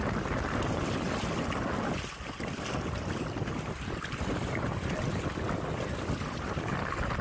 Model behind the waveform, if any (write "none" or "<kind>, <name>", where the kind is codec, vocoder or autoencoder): none